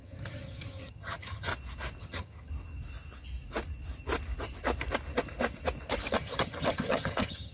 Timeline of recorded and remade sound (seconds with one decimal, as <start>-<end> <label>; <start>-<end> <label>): 0.0-1.5 remade; 1.5-2.0 recorded; 2.0-2.5 remade; 2.5-6.1 recorded; 6.1-7.5 remade